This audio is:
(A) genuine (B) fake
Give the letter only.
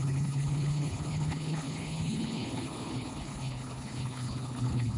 B